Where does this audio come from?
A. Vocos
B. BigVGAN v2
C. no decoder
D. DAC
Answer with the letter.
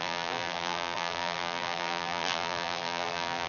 B